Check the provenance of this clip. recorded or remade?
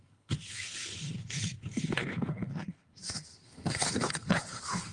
remade